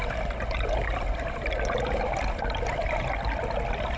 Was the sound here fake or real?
real